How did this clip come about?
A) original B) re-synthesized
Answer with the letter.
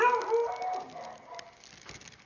A